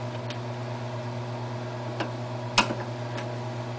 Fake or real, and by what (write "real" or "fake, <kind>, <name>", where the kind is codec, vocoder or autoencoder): real